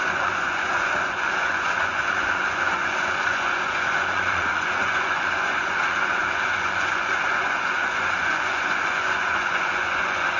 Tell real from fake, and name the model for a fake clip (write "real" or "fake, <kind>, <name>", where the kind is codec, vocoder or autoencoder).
fake, vocoder, Vocos